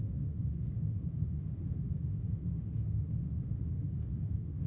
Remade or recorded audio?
remade